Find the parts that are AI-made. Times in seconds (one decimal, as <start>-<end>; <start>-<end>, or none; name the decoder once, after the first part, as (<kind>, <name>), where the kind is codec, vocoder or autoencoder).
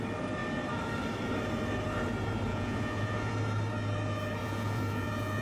2.5-3.3 (vocoder, Vocos); 4.4-5.4